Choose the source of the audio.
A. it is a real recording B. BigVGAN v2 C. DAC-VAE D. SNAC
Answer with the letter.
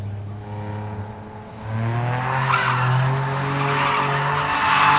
A